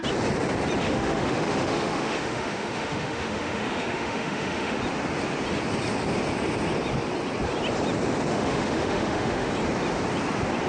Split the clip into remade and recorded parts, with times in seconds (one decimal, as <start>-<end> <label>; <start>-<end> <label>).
0.0-0.8 recorded; 0.8-4.8 remade; 4.8-8.3 recorded; 8.3-9.5 remade; 9.5-10.7 recorded